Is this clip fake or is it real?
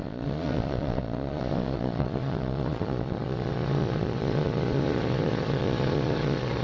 fake